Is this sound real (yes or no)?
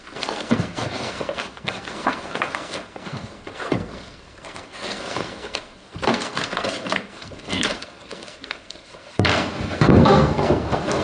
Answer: no